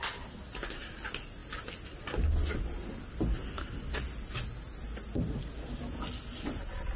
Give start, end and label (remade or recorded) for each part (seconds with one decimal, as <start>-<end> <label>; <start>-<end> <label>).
0.0-7.0 recorded